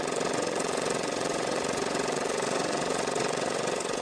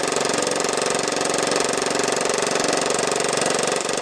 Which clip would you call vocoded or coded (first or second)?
first